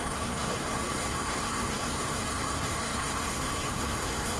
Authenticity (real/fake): fake